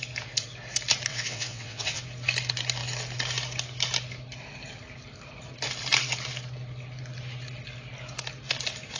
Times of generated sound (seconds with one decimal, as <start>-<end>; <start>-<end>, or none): 1.1-2.0